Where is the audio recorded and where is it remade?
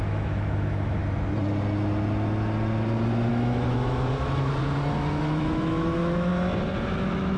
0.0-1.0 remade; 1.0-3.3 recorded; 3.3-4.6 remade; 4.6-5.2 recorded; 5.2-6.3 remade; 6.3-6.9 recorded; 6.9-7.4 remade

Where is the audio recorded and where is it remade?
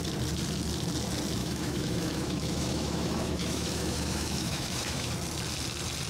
0.0-1.4 recorded; 1.4-5.1 remade; 5.1-6.1 recorded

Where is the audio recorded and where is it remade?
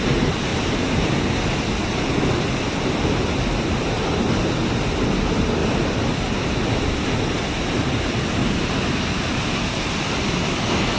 0.0-11.0 recorded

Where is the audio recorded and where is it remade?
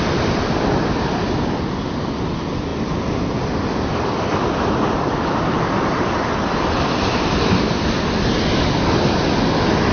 0.0-9.9 recorded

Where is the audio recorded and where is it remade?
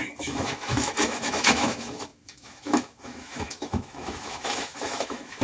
0.0-5.4 remade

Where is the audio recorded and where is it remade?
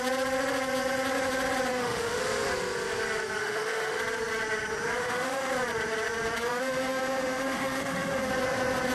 0.0-1.7 recorded; 1.7-2.2 remade; 2.2-3.4 recorded; 3.4-4.0 remade; 4.0-5.0 recorded; 5.0-5.5 remade; 5.5-6.5 recorded; 6.5-8.3 remade; 8.3-8.9 recorded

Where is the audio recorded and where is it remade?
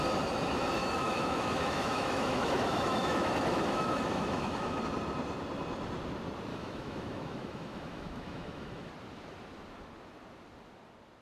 0.0-0.8 recorded; 0.8-4.8 remade; 4.8-6.5 recorded; 6.5-8.9 remade; 8.9-11.2 recorded